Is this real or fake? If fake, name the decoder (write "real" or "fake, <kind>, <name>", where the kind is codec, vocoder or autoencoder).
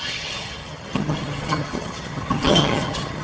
fake, vocoder, HiFi-GAN